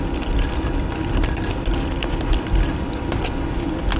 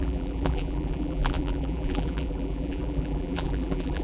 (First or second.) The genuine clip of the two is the first